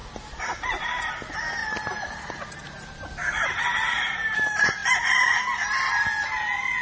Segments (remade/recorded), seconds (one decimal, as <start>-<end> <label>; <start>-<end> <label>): 0.0-0.9 remade; 0.9-1.6 recorded; 1.6-3.1 remade; 3.1-4.8 recorded; 4.8-5.4 remade; 5.4-6.8 recorded